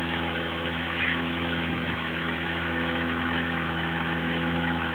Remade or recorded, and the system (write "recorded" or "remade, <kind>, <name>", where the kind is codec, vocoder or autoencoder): remade, autoencoder, DAC-VAE